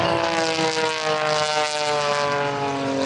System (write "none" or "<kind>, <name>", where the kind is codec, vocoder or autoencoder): none